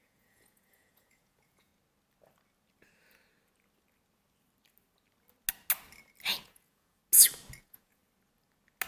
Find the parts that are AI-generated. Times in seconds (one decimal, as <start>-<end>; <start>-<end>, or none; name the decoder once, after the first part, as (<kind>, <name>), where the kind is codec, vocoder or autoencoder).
0.0-1.7 (vocoder, Vocos); 6.4-7.0; 7.6-8.0